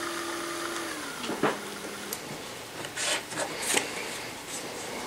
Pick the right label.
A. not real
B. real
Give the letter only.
B